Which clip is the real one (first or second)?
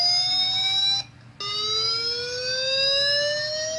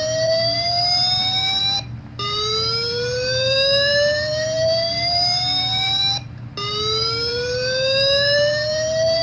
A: first